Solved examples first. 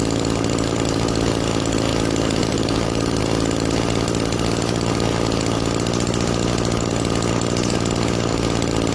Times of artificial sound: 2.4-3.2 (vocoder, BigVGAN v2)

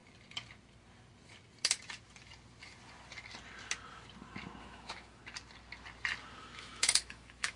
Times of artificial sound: 4.6-5.2 (autoencoder, DAC-VAE); 6.4-7.6

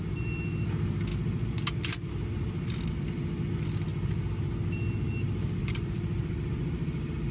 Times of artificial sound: none

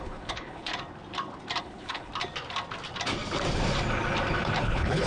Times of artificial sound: 0.0-0.7 (codec, HILCodec); 1.6-2.1; 4.6-5.1